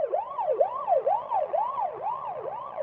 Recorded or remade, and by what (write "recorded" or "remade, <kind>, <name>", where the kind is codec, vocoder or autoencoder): remade, vocoder, Vocos